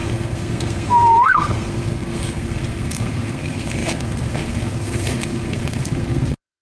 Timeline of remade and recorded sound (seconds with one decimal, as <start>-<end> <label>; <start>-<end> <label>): 0.0-6.6 remade